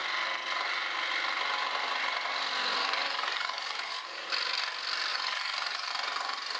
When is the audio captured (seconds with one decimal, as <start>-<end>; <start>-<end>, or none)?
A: 0.0-2.8; 4.3-5.1; 5.9-6.6